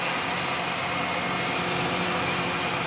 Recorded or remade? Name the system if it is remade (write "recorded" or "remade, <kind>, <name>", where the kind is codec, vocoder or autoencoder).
recorded